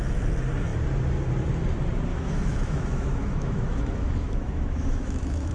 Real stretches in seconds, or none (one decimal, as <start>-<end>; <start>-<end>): 0.0-2.1